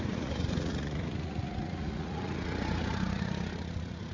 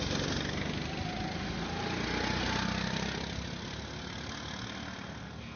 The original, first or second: second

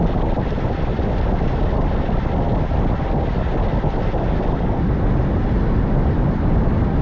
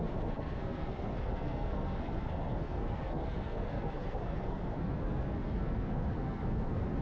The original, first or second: first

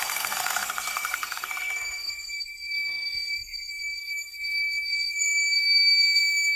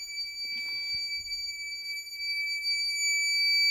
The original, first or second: second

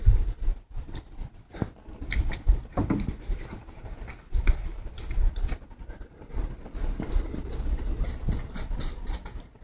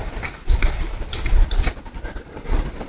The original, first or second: first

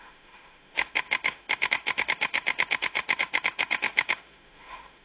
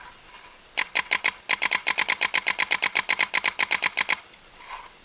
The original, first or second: second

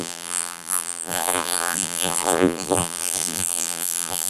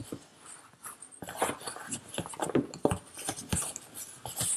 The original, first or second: second